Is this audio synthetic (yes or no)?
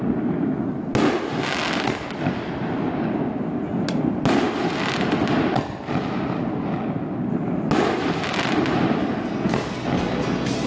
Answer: no